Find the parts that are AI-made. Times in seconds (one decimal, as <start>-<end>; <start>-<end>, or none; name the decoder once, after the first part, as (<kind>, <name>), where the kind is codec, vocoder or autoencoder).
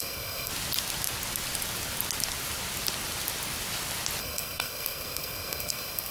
0.0-0.5 (codec, SNAC); 4.2-6.1